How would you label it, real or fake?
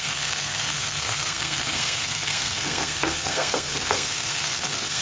fake